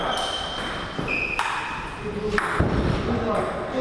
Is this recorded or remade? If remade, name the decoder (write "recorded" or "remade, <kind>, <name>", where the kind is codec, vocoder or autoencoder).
recorded